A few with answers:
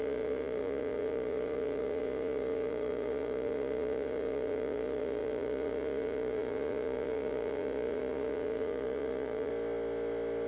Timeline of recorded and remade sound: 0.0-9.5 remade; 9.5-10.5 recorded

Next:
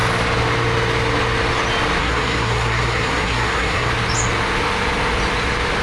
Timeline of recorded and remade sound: 0.0-2.0 recorded; 2.0-3.9 remade; 3.9-5.8 recorded

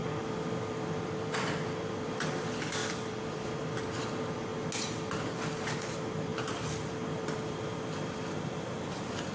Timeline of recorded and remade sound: 0.0-4.5 remade; 4.5-5.3 recorded; 5.3-6.3 remade; 6.3-6.9 recorded; 6.9-9.3 remade

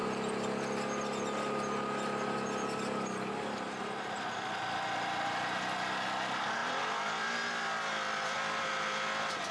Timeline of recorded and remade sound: 0.0-6.6 recorded; 6.6-8.7 remade; 8.7-9.5 recorded